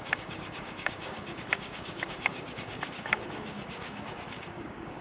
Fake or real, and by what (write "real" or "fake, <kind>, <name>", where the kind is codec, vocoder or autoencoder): fake, codec, DAC